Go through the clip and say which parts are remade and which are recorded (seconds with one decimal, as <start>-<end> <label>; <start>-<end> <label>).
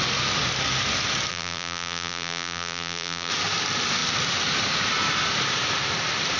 0.0-1.3 recorded; 1.3-3.3 remade; 3.3-6.4 recorded